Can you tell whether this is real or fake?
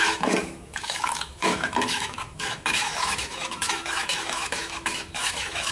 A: fake